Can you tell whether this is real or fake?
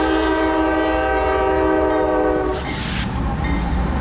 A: real